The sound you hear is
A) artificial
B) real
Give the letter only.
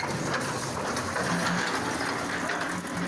B